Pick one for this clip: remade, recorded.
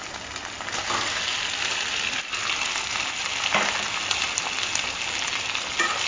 recorded